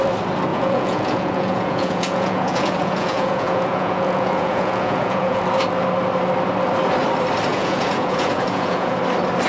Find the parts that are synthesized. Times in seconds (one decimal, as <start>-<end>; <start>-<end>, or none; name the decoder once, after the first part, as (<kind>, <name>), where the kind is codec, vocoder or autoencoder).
0.5-5.4 (vocoder, Vocos); 7.5-9.0